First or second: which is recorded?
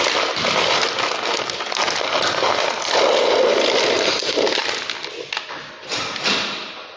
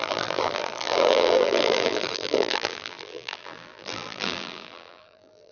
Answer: first